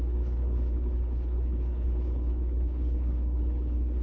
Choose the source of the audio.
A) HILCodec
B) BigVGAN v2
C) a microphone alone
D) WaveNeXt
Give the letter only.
A